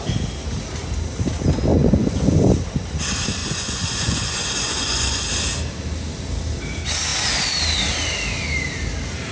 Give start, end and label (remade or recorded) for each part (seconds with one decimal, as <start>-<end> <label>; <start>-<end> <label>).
0.0-1.7 recorded; 1.7-2.5 remade; 2.5-3.4 recorded; 3.4-5.2 remade; 5.2-9.3 recorded